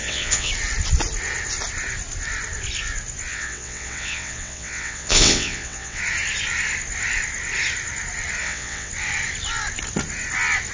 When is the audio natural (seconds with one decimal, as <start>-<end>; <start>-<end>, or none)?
0.5-3.3; 6.0-8.4; 8.9-10.7